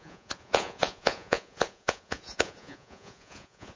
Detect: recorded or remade remade